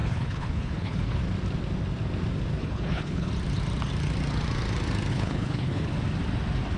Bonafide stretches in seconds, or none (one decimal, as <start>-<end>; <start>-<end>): 1.2-2.6; 3.3-5.1; 5.9-6.8